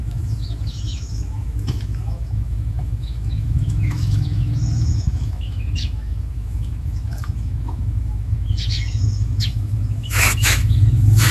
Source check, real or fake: fake